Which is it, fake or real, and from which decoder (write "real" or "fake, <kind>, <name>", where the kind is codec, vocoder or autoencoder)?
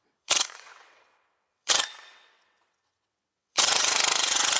fake, vocoder, WaveNeXt